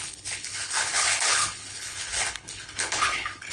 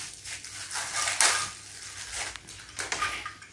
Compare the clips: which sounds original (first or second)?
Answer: second